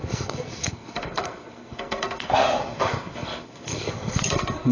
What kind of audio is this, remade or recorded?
remade